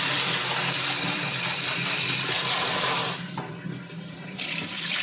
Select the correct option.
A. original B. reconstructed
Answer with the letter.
B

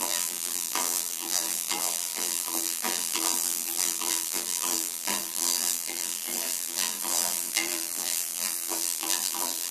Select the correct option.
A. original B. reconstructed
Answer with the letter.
B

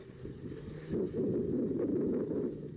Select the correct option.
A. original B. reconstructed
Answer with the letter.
A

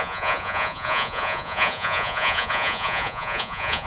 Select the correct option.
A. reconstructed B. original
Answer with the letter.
A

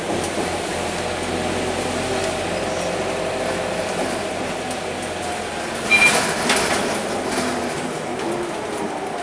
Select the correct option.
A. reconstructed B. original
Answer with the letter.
B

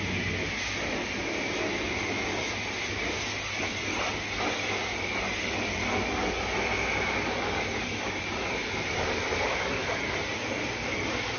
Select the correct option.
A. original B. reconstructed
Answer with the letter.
A